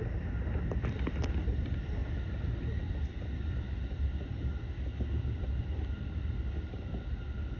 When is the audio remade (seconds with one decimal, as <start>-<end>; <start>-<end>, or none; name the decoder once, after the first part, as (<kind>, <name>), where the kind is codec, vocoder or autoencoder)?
none